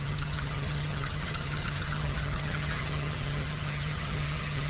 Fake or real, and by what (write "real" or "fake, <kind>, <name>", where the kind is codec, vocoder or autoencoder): fake, vocoder, HiFi-GAN